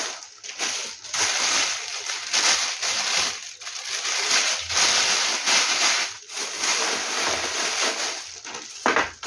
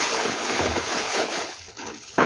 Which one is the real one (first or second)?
first